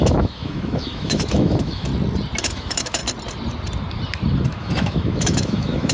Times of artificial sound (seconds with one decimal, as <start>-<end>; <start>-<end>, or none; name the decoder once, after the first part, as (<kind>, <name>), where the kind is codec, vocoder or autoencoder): 0.0-1.9 (autoencoder, DAC-VAE); 2.4-3.0; 4.5-5.9